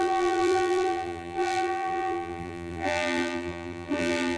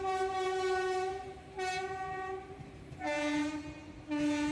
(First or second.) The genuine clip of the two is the second